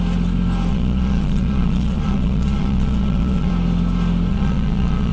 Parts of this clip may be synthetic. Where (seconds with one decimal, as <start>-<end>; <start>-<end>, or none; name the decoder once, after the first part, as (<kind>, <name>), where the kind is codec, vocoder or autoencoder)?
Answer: 0.7-3.5 (vocoder, Vocos); 4.3-5.1